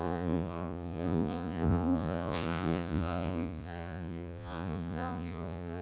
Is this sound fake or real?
fake